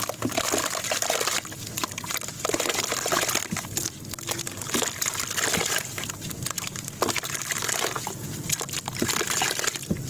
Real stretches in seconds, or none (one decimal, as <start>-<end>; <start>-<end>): 0.0-10.1